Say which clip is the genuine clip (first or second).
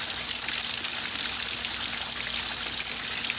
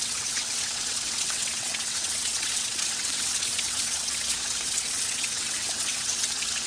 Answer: first